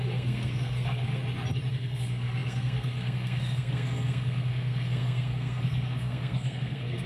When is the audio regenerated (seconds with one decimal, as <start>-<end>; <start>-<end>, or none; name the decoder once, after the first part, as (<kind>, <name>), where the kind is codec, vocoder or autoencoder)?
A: 0.0-1.2 (codec, SNAC); 1.7-7.1